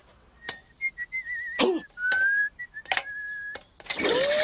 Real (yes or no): yes